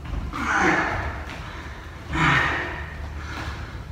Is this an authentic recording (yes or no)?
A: yes